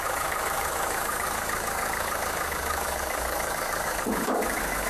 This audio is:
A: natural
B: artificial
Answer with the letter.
B